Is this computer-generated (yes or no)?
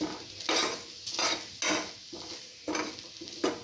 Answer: no